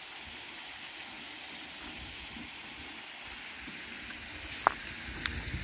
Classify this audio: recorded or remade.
recorded